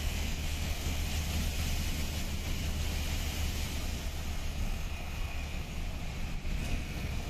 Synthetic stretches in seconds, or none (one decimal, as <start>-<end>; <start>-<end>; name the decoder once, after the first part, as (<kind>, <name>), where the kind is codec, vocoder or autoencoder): 0.0-1.0 (codec, SNAC); 4.5-5.8; 6.6-7.3